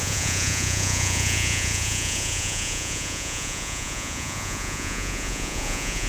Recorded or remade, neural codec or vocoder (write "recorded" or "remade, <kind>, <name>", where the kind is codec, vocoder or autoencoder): remade, vocoder, Vocos